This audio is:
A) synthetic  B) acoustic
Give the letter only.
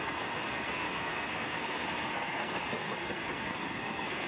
A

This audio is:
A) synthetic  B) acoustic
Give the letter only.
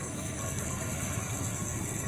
A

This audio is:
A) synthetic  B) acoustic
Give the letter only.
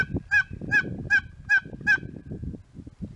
B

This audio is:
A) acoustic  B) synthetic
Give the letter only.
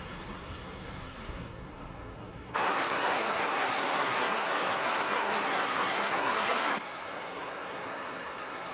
B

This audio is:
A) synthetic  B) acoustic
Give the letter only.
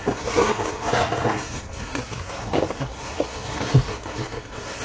A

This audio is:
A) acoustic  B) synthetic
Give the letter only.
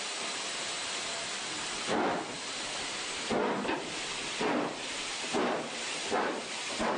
A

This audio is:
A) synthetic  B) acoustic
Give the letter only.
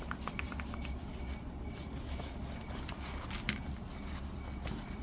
B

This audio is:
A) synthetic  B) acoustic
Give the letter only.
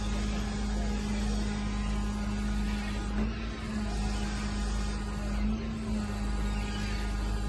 B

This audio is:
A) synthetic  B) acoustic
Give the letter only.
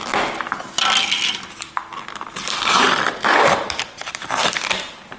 B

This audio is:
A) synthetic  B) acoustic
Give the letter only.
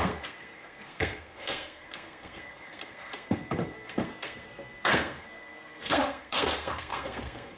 A